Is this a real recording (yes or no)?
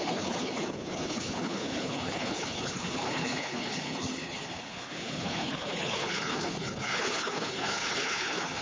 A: no